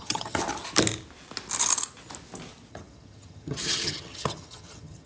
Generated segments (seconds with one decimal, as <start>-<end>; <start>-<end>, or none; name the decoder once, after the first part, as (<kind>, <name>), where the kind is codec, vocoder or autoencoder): 0.0-0.4 (vocoder, HiFi-GAN); 2.7-5.1